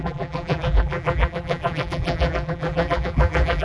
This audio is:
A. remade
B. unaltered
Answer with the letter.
A